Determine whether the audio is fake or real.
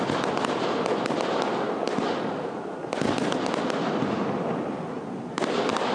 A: real